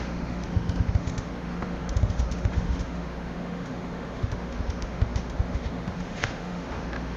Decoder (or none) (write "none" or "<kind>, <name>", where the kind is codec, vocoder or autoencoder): autoencoder, DAC-VAE